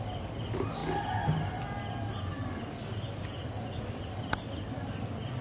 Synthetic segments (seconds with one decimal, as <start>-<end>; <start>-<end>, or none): none